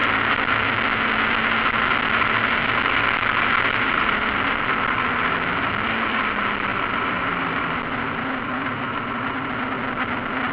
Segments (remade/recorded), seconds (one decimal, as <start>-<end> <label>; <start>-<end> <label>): 0.0-10.5 recorded